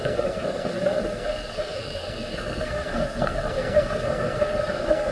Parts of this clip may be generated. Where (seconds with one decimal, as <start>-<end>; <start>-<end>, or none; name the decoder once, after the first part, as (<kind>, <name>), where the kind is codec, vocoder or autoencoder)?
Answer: 0.0-5.1 (codec, SNAC)